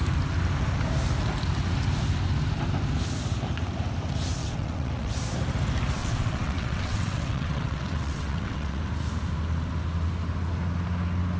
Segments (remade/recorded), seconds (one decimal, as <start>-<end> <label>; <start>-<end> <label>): 0.0-4.4 recorded; 4.4-5.1 remade; 5.1-6.0 recorded; 6.0-8.8 remade; 8.8-11.4 recorded